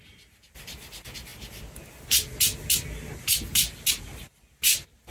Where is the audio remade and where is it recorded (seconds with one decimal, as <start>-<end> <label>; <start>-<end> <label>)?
0.0-5.1 recorded